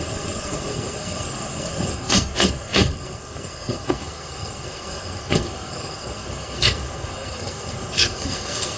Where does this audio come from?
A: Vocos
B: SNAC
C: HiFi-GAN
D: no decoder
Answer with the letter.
B